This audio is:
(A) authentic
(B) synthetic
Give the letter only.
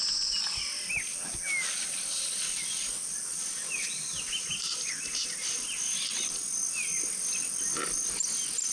A